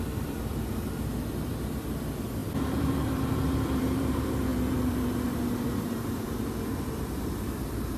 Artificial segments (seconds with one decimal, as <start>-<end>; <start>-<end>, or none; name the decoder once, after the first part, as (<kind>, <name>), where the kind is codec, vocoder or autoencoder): 0.0-8.0 (vocoder, BigVGAN v2)